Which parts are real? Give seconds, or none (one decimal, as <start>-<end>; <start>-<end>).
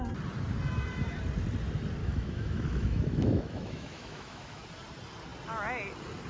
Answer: 0.0-2.0; 4.6-6.3